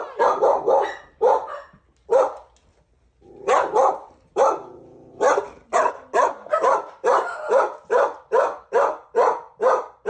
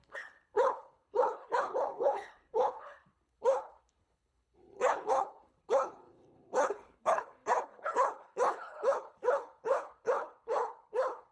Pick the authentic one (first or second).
first